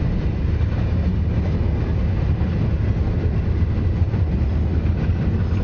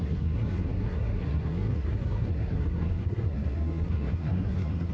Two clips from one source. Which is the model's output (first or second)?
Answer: second